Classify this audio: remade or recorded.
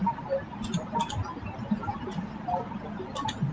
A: recorded